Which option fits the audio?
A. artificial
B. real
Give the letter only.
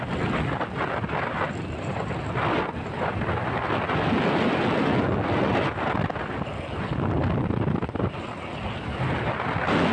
B